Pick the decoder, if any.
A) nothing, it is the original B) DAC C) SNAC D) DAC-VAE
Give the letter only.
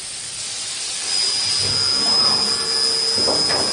A